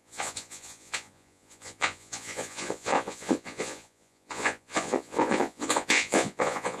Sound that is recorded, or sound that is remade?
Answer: remade